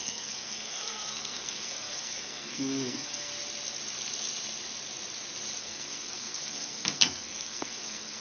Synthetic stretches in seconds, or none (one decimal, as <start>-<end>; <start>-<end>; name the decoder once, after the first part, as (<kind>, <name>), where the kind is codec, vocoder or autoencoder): 0.0-3.3 (codec, SNAC); 5.6-8.2

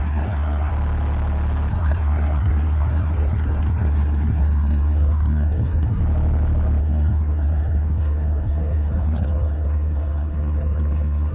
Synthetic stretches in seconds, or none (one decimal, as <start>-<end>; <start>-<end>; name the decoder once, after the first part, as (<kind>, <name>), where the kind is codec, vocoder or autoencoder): 0.0-0.7 (codec, SNAC); 1.7-6.0; 6.8-11.3

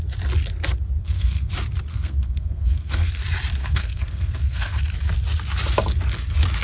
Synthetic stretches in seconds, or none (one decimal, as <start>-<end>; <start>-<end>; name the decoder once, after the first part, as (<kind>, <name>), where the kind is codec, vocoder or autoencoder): 1.0-1.5 (codec, SNAC); 1.9-3.1; 3.6-4.8

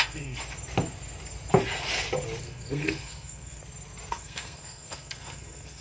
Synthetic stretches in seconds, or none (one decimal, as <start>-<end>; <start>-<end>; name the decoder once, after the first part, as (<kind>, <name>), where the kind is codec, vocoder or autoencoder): 0.0-0.4 (codec, SNAC); 2.4-3.6; 4.1-5.8

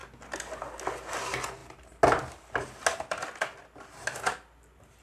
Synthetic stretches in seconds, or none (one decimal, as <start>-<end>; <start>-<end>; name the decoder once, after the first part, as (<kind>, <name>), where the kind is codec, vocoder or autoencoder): none